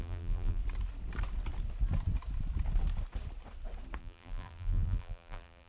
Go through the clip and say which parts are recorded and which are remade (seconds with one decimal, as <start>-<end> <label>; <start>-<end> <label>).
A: 0.0-0.6 remade; 0.6-4.0 recorded; 4.0-5.7 remade